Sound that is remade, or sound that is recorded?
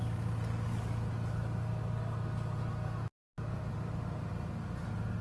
recorded